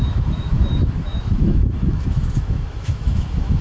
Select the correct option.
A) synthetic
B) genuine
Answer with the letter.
A